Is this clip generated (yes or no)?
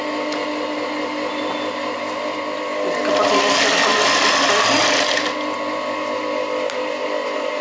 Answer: no